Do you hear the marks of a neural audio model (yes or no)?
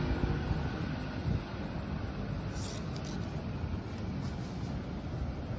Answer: no